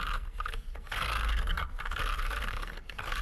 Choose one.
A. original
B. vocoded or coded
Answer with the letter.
B